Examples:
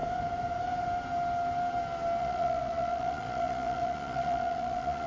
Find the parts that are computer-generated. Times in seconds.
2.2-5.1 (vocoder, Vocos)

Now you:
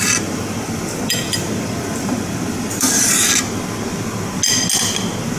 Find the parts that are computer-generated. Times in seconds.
0.0-3.2 (vocoder, BigVGAN v2)

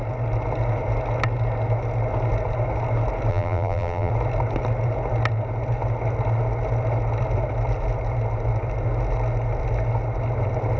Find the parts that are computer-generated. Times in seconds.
3.3-4.1 (vocoder, BigVGAN v2)

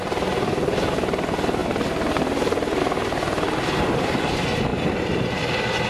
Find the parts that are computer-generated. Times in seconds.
none

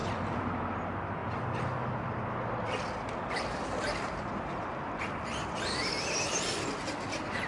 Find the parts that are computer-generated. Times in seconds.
none

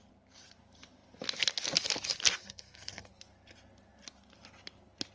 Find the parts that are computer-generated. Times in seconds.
2.4-3.1 (codec, SNAC)

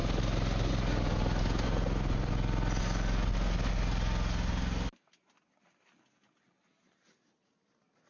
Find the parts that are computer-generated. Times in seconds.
none